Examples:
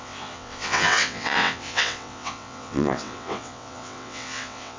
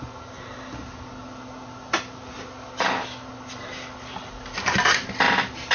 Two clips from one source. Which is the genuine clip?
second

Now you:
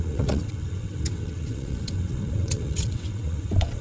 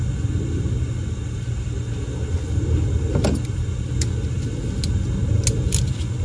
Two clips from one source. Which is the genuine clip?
second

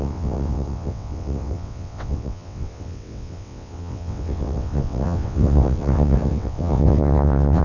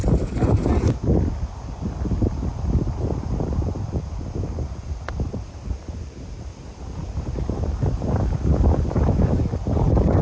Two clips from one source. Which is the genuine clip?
second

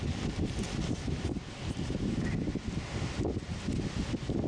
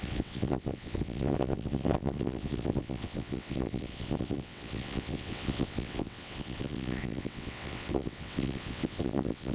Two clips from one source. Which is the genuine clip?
first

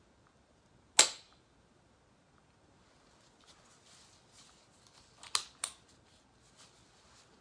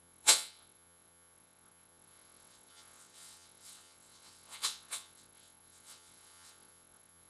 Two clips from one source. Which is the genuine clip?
first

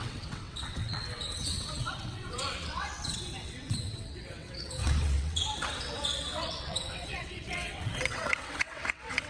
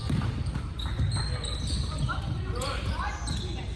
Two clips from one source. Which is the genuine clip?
second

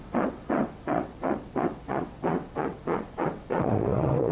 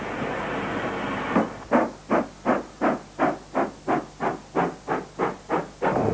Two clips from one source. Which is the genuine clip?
second